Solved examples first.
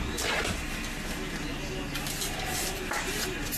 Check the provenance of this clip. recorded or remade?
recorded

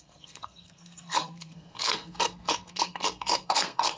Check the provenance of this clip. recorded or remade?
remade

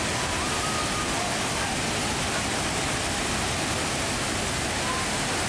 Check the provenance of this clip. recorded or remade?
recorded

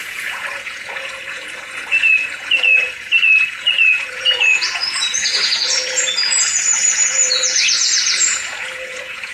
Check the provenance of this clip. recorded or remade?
remade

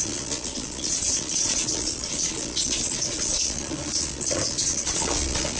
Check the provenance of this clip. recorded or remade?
remade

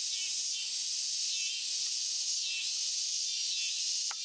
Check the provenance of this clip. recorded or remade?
recorded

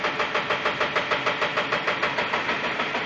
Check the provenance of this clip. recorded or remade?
recorded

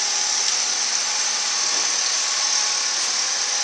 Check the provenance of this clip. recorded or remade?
recorded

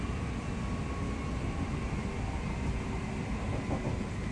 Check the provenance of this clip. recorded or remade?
recorded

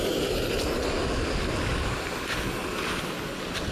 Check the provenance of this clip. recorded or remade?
recorded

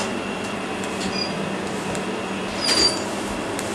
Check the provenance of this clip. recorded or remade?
recorded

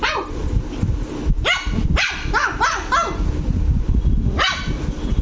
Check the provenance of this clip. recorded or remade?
recorded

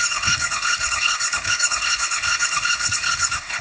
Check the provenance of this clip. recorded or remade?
remade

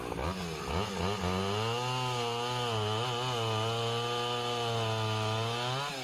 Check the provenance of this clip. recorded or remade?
recorded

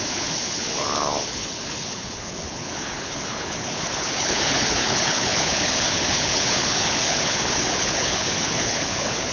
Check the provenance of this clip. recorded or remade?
remade